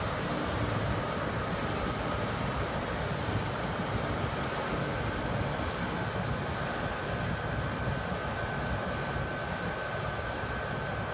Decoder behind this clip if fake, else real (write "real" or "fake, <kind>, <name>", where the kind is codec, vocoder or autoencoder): real